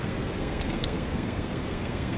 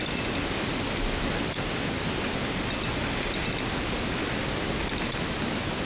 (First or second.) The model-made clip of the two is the first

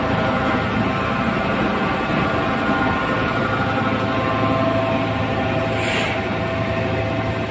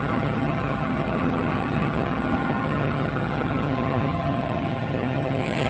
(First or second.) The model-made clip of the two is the second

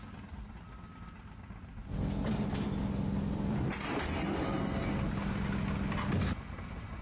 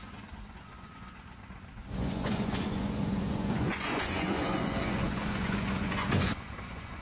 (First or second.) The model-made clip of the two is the second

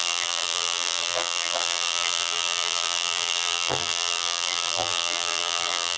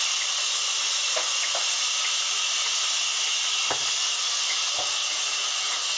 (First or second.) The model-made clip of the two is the first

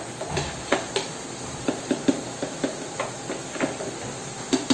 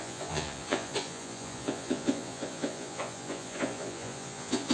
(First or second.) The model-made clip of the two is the second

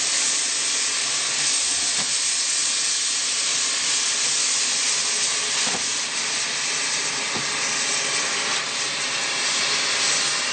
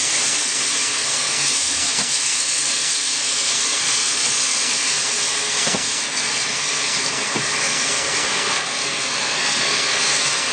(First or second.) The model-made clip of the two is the second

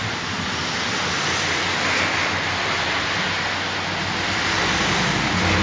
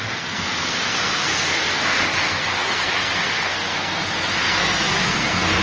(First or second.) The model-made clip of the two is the second